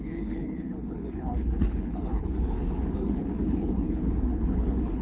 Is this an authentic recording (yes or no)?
no